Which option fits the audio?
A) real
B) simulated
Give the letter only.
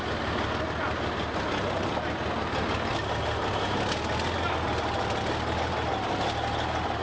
A